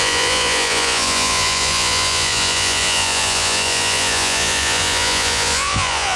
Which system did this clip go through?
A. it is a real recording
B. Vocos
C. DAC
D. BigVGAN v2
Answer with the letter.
B